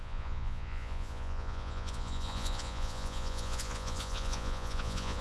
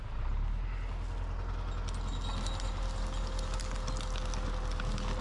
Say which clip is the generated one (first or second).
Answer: first